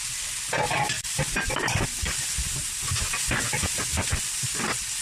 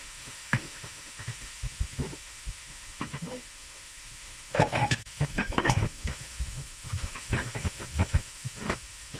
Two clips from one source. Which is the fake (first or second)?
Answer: second